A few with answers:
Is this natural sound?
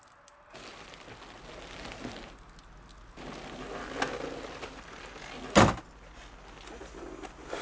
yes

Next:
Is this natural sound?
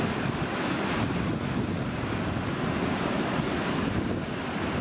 yes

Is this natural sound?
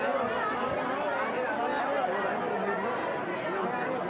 yes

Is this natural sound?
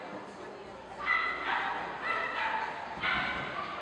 yes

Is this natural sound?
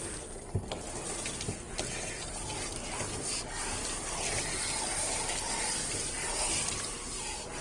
yes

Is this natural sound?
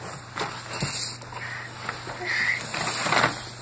yes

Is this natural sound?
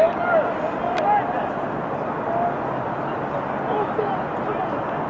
yes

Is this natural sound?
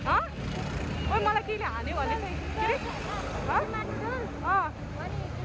yes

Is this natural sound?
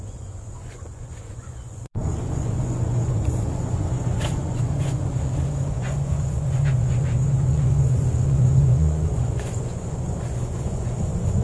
no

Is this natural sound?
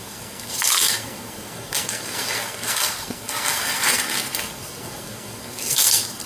no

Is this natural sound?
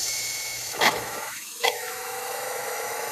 no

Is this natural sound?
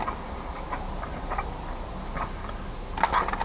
yes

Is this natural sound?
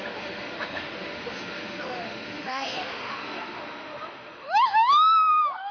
no